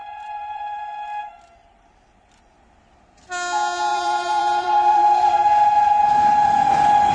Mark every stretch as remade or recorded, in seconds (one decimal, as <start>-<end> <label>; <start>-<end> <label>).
0.0-0.8 remade; 0.8-3.9 recorded; 3.9-5.3 remade; 5.3-7.1 recorded